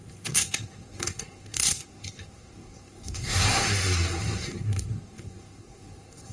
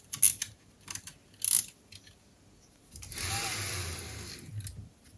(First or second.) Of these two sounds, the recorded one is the second